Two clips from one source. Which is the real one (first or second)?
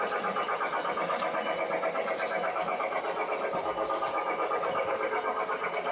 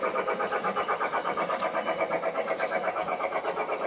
first